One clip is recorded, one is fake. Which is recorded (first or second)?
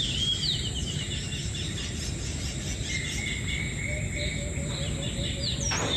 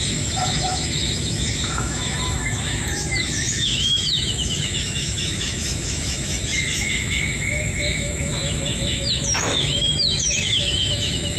first